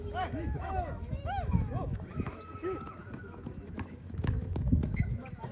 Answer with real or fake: fake